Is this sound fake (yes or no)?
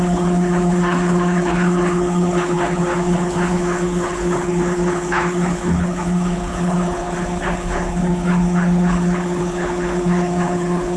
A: yes